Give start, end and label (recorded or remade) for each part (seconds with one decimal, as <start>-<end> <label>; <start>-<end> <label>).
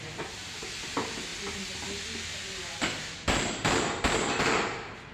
0.0-5.1 recorded